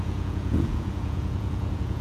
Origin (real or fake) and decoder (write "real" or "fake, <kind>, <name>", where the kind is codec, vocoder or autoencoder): fake, vocoder, Vocos